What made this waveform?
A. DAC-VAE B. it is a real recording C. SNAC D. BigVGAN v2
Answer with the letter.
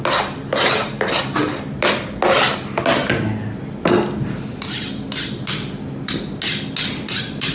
B